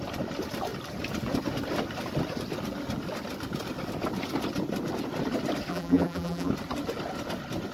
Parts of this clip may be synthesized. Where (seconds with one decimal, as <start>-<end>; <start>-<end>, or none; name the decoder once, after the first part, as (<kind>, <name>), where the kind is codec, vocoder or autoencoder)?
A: 5.7-6.5 (vocoder, BigVGAN v2)

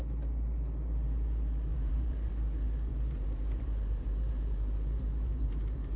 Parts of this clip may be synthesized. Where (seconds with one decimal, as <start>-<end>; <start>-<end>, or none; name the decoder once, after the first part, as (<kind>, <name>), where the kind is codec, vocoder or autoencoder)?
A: 1.7-2.3 (vocoder, BigVGAN v2); 2.9-6.0

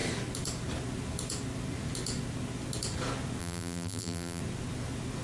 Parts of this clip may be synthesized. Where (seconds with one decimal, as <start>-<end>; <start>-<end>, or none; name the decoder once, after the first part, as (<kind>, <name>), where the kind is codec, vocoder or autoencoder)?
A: 3.4-4.4 (vocoder, BigVGAN v2)

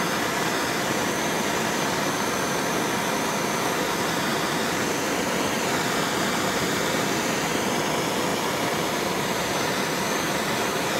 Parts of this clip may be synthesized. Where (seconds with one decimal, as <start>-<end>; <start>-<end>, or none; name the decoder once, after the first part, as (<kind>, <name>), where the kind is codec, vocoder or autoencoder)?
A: 4.3-5.3 (vocoder, BigVGAN v2); 8.3-9.7

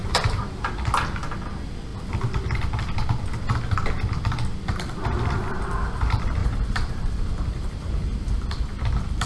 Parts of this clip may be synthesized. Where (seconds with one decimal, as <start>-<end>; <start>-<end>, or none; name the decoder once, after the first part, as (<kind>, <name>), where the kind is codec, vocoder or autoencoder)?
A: 0.0-0.7 (vocoder, BigVGAN v2); 6.4-7.9

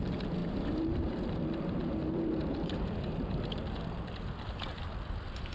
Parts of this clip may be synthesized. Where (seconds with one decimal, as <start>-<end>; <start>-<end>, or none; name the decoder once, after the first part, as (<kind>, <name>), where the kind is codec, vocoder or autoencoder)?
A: 0.4-3.7 (vocoder, BigVGAN v2)